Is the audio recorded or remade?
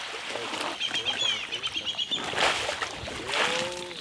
recorded